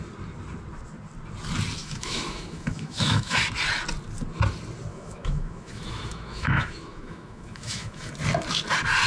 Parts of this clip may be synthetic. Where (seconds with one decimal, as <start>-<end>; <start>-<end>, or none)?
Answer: 1.8-3.4; 4.9-8.1